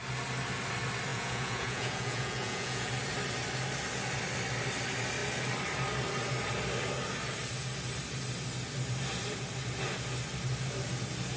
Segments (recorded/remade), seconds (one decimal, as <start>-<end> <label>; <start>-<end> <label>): 0.0-1.1 recorded; 1.1-2.9 remade; 2.9-11.4 recorded